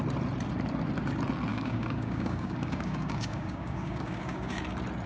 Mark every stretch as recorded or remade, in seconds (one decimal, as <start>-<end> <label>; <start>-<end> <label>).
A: 0.0-1.5 recorded; 1.5-4.6 remade; 4.6-5.1 recorded